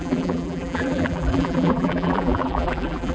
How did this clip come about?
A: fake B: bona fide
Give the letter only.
A